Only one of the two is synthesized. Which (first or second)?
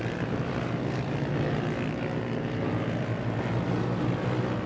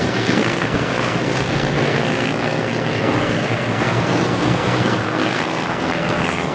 second